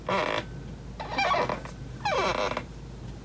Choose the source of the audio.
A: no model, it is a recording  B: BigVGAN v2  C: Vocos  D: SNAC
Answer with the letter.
A